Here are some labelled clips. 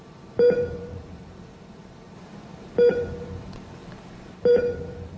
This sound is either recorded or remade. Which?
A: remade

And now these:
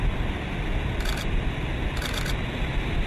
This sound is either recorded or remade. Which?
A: recorded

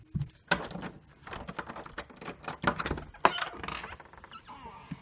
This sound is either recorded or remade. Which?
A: recorded